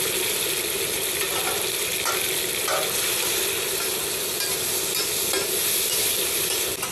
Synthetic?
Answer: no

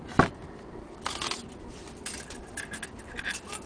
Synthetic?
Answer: no